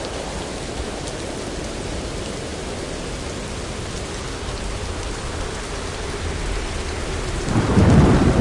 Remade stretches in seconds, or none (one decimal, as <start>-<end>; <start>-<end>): none

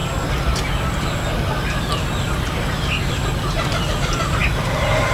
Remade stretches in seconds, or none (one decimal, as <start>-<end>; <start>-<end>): none

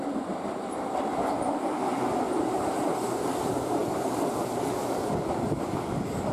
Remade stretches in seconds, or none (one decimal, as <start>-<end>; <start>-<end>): none

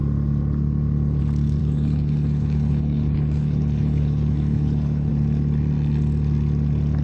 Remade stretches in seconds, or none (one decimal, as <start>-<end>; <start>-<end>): 1.6-5.1